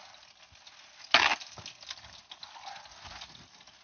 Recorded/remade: recorded